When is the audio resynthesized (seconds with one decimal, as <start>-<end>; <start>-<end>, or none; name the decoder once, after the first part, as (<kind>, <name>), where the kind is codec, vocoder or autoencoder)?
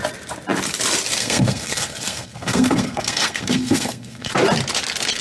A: 1.2-4.3 (codec, SNAC)